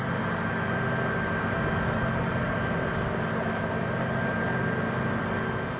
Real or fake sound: real